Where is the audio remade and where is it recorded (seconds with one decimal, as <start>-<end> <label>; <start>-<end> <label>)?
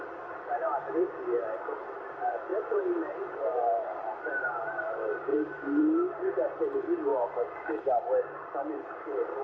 0.0-2.5 recorded; 2.5-4.8 remade; 4.8-9.4 recorded